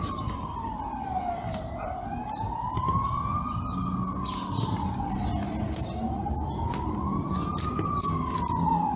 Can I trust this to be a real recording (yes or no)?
yes